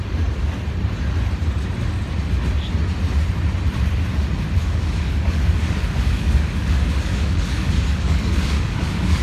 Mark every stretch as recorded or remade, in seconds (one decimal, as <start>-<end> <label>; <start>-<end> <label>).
0.0-4.6 recorded; 4.6-9.2 remade